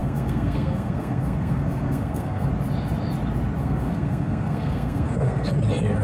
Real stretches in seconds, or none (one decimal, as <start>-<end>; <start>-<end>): 2.5-3.6; 5.5-6.0